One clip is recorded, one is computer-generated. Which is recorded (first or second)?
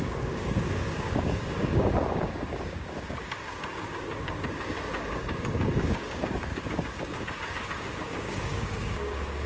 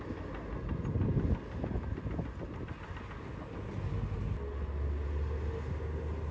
second